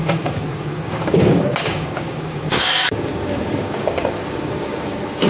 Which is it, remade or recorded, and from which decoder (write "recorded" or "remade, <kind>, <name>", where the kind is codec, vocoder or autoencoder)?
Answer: remade, codec, DAC